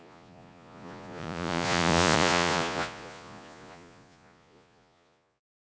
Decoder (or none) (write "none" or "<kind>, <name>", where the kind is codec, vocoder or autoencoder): vocoder, Vocos